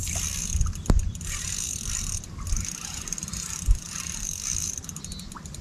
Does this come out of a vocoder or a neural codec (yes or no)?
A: no